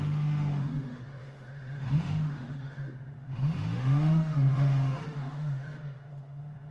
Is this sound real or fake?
fake